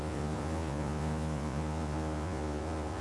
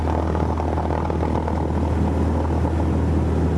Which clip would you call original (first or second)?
second